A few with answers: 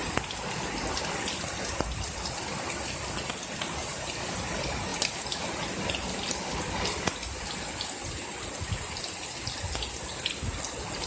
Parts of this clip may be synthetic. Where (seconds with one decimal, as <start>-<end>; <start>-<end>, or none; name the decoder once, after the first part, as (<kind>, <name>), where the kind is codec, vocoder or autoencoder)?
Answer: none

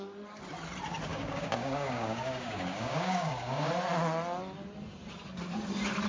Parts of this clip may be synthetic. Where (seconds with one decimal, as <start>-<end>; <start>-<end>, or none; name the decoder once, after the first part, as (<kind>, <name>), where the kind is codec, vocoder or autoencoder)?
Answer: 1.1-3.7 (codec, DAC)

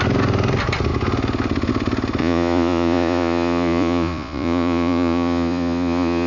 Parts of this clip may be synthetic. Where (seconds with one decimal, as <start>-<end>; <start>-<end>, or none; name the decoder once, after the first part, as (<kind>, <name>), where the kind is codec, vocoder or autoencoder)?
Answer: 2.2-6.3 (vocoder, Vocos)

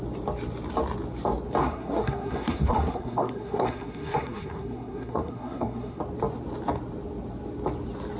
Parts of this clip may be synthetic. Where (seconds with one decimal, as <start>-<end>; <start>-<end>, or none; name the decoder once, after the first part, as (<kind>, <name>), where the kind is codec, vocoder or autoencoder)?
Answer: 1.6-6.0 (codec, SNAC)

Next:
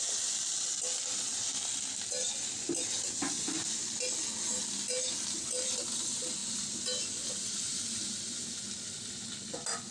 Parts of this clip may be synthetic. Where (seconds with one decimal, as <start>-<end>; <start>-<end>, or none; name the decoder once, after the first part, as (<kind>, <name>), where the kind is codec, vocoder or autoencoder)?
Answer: none